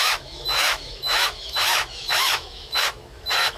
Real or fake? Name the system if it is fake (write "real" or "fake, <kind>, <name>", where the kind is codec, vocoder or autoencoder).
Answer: fake, autoencoder, DAC-VAE